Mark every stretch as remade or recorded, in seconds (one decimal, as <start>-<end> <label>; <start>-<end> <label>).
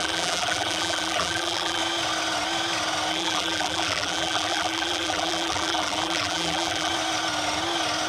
0.0-1.8 remade; 1.8-3.1 recorded; 3.1-6.9 remade; 6.9-8.1 recorded